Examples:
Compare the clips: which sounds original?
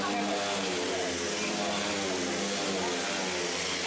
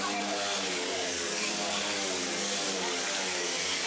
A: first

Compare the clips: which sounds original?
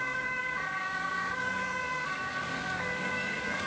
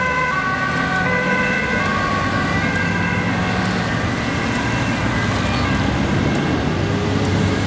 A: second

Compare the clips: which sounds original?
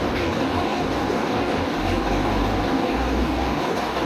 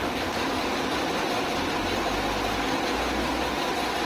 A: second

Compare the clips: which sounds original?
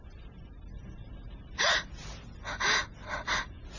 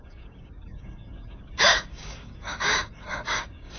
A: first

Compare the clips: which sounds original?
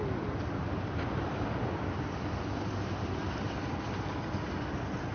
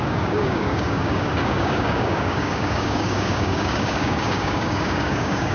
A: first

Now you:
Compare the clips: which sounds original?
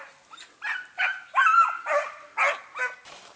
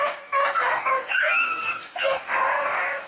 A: first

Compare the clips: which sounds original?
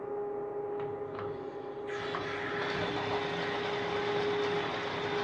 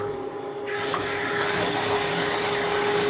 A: first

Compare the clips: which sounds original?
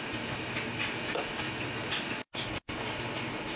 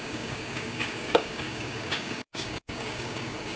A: first